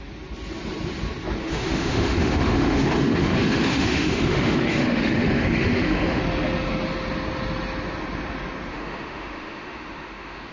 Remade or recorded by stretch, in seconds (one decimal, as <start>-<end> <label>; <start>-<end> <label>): 0.0-1.4 recorded; 1.4-6.2 remade; 6.2-8.7 recorded; 8.7-10.5 remade